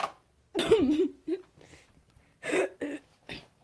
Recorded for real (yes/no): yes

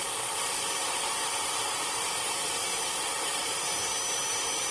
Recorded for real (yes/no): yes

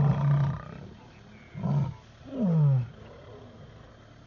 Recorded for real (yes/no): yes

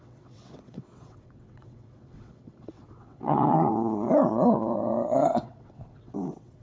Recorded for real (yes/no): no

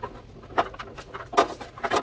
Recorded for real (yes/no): yes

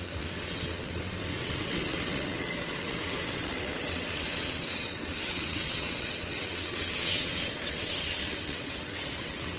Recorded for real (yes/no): no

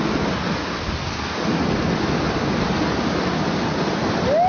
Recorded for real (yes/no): yes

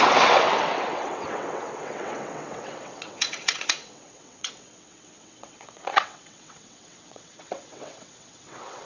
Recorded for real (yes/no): no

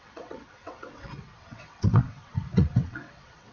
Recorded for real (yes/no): no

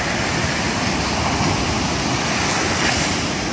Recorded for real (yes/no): yes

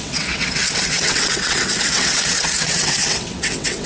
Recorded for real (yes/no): no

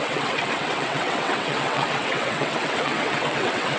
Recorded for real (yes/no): no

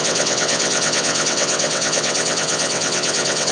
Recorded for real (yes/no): no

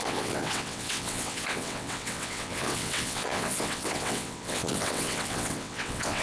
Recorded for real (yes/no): no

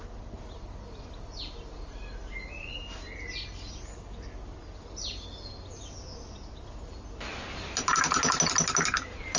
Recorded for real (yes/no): yes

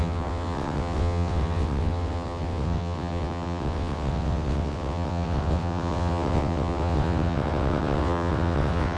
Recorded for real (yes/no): no